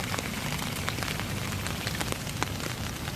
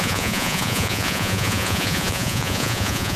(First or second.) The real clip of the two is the first